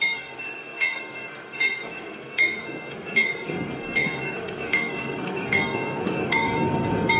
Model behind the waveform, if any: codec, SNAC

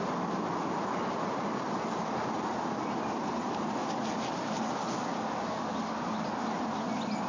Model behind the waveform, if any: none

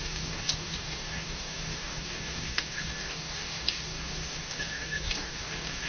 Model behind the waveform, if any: codec, DAC